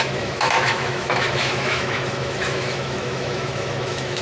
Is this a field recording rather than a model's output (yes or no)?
no